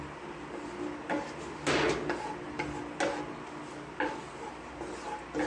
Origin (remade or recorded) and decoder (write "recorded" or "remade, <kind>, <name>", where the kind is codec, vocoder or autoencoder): recorded